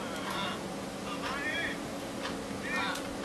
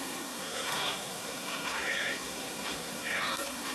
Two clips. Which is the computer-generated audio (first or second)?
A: second